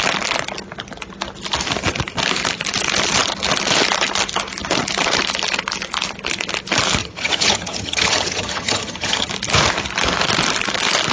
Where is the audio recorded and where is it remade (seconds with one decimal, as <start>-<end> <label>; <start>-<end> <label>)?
0.0-7.0 recorded; 7.0-9.3 remade; 9.3-11.1 recorded